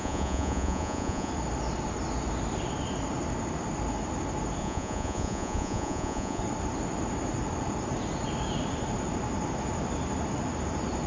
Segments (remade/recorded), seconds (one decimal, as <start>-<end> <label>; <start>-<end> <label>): 0.0-1.3 remade; 1.3-4.6 recorded; 4.6-6.4 remade; 6.4-11.1 recorded

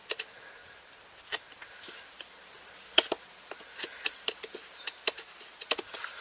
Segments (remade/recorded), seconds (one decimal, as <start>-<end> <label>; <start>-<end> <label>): 0.0-6.2 recorded

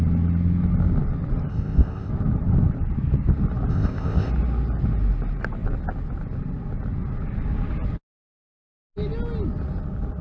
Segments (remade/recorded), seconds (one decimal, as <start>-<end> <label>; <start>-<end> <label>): 0.0-1.5 recorded; 1.5-2.1 remade; 2.1-3.7 recorded; 3.7-4.3 remade; 4.3-10.2 recorded